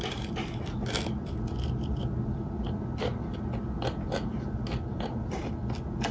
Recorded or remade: recorded